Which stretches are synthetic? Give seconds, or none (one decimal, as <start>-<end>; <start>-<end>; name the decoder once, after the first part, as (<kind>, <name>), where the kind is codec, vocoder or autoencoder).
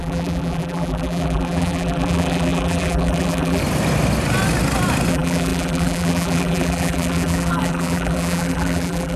0.0-3.6 (vocoder, BigVGAN v2); 5.1-9.2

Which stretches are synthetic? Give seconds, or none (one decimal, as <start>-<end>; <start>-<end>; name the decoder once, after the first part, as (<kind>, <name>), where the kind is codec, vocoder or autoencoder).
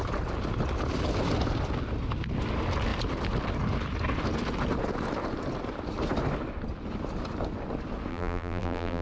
8.1-9.0 (vocoder, BigVGAN v2)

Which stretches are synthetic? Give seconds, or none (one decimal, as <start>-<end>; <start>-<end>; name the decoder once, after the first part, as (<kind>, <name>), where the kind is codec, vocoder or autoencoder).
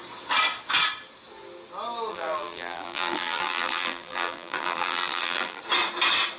2.1-5.6 (vocoder, BigVGAN v2)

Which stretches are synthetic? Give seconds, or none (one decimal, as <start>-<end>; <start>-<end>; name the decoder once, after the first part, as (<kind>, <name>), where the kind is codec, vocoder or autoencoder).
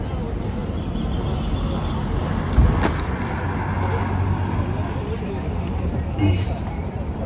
0.0-0.6 (vocoder, BigVGAN v2); 5.0-7.3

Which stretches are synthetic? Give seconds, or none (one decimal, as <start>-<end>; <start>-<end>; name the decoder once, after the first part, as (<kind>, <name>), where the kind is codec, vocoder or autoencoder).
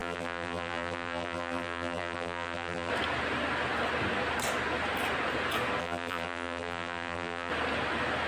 0.0-2.9 (vocoder, BigVGAN v2); 5.8-7.5